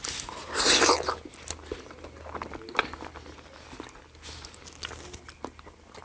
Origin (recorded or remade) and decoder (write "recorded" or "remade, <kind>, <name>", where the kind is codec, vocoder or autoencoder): recorded